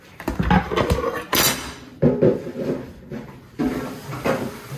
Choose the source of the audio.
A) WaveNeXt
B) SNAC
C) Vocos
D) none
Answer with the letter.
D